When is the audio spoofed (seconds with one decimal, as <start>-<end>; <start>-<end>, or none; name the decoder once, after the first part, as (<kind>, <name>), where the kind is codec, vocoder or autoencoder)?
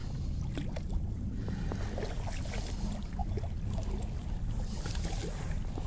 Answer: none